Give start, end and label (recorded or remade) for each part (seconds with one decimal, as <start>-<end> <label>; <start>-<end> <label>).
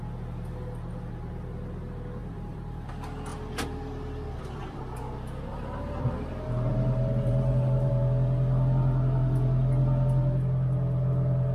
0.0-2.2 recorded; 2.2-2.9 remade; 2.9-5.5 recorded; 5.5-6.3 remade; 6.3-6.7 recorded; 6.7-7.9 remade; 7.9-11.5 recorded